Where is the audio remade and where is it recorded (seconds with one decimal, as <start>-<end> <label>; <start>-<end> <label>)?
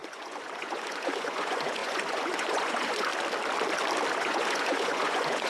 0.0-3.1 remade; 3.1-4.2 recorded; 4.2-5.5 remade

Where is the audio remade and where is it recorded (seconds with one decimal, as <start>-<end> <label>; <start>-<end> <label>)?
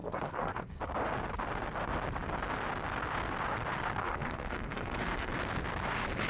0.0-0.8 remade; 0.8-4.0 recorded; 4.0-5.3 remade; 5.3-6.3 recorded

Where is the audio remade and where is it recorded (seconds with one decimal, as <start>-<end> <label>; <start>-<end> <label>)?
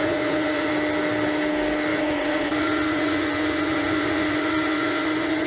0.0-0.7 remade; 0.7-1.9 recorded; 1.9-5.5 remade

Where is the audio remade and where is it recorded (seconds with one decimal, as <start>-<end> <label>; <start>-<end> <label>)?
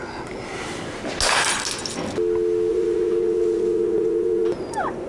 0.0-2.7 recorded; 2.7-5.1 remade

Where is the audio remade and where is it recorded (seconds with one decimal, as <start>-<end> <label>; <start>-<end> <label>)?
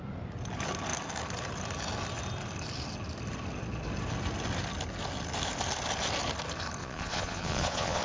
0.0-6.8 recorded; 6.8-8.0 remade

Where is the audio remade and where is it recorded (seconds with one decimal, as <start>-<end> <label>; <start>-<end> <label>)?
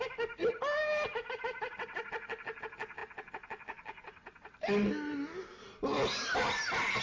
0.0-7.0 recorded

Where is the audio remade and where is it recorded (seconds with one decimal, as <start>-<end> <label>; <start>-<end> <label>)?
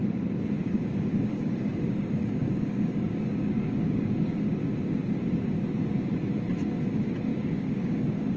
0.0-0.6 recorded; 0.6-4.6 remade; 4.6-7.3 recorded; 7.3-8.4 remade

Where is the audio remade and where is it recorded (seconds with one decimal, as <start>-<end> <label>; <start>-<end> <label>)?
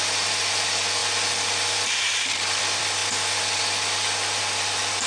0.0-5.1 recorded